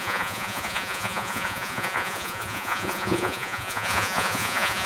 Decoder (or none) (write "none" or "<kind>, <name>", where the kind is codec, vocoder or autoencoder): vocoder, Vocos